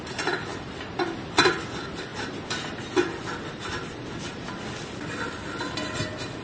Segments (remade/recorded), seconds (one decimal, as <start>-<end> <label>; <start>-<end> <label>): 0.0-6.4 recorded